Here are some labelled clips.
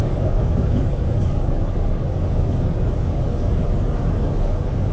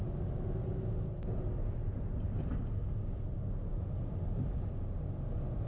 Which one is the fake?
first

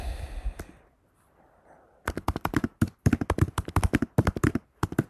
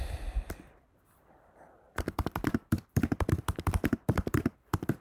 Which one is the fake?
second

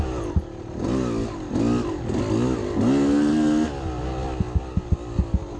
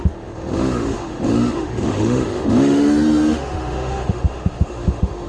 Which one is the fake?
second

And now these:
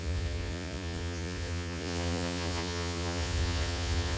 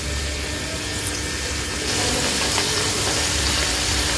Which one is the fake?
first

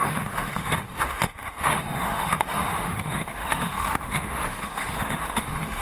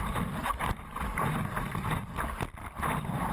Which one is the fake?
first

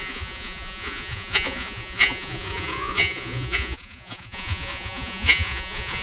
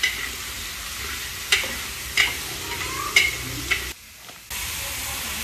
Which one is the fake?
first